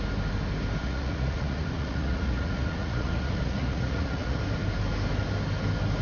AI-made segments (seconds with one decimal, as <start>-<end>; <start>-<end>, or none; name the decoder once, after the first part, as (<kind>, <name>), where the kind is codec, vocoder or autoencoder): 0.8-4.4 (vocoder, Vocos)